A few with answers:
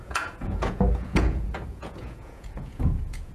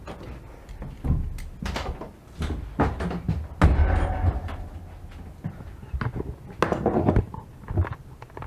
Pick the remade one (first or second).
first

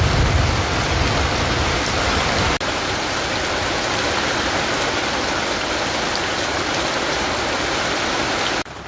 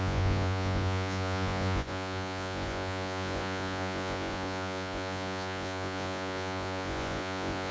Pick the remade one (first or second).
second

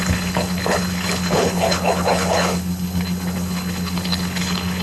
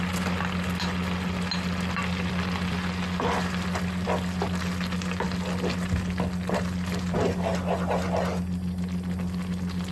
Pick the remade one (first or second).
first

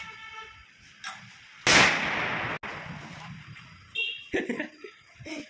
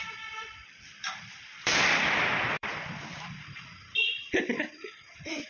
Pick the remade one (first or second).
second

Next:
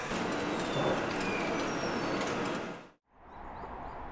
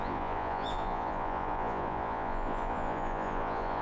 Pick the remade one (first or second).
second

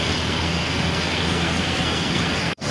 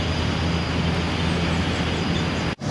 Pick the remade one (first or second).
first